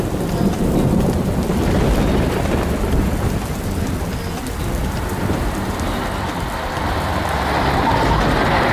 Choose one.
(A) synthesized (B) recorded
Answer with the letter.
B